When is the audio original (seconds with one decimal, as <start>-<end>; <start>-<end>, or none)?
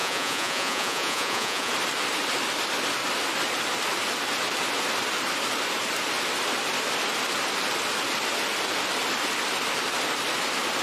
1.7-10.8